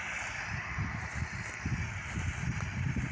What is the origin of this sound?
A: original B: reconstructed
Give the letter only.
A